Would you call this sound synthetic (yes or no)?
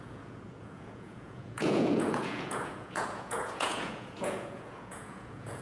yes